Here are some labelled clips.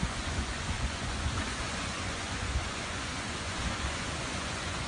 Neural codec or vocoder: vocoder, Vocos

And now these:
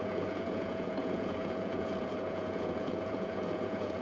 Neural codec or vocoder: vocoder, Vocos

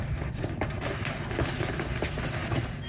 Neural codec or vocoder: none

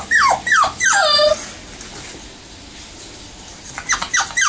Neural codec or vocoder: none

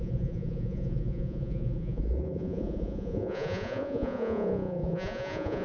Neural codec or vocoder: vocoder, Vocos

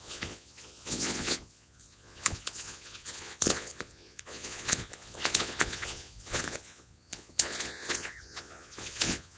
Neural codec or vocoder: vocoder, Vocos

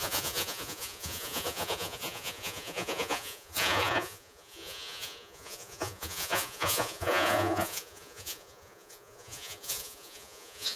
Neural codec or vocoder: vocoder, Vocos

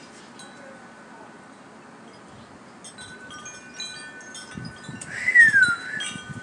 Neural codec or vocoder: none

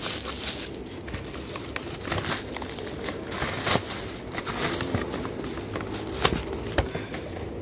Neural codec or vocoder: none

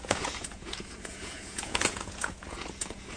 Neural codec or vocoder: vocoder, Vocos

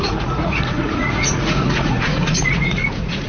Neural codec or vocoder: vocoder, Vocos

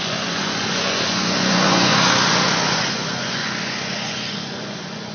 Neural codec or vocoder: vocoder, Vocos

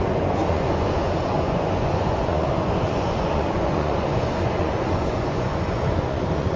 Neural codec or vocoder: vocoder, Vocos